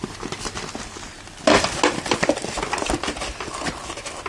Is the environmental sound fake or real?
real